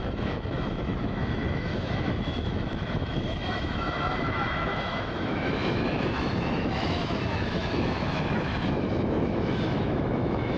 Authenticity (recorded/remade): remade